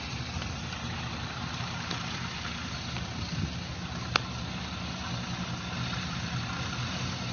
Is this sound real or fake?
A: real